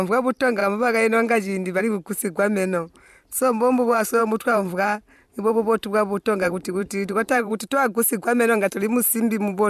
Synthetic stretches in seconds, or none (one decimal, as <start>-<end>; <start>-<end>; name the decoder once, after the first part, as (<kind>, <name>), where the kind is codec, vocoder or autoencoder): 0.0-9.7 (vocoder, BigVGAN v2)